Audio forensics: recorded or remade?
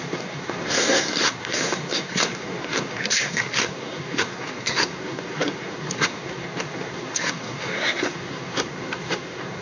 remade